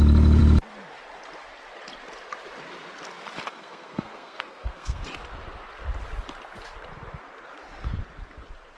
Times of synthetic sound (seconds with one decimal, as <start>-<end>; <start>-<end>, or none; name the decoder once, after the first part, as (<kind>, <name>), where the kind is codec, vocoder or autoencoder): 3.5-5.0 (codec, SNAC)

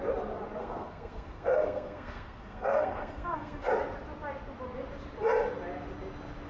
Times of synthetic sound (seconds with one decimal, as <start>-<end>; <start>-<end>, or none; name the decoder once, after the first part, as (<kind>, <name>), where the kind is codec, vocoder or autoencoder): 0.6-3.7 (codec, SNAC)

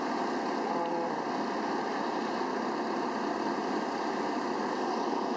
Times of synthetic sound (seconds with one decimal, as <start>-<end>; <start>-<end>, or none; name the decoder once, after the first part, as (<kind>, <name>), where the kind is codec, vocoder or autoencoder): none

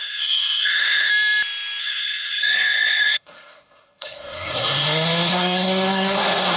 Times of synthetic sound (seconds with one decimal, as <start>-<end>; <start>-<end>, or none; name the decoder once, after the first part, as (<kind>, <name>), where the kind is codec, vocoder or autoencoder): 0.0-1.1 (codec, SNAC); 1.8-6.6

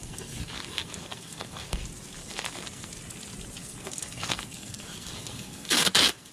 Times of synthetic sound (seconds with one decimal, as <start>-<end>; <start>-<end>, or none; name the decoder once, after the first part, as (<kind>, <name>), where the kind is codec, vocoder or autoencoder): 0.0-1.8 (codec, SNAC); 2.2-2.9; 3.6-6.3

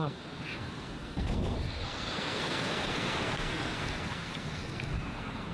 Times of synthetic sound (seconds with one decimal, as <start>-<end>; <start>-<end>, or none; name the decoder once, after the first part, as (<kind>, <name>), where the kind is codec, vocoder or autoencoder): 0.0-5.5 (codec, SNAC)

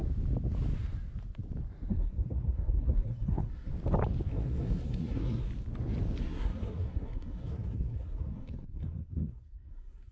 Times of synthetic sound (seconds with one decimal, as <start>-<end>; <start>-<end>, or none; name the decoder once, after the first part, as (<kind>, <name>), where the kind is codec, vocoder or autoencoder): 1.9-3.7 (codec, SNAC); 4.3-5.5; 6.2-10.1

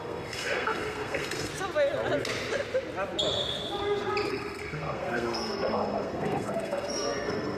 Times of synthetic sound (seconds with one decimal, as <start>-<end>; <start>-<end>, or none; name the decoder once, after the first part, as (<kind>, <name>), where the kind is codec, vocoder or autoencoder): 0.0-1.5 (codec, SNAC); 4.3-7.6